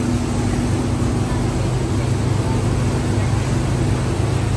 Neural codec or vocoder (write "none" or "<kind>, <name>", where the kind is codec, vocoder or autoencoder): none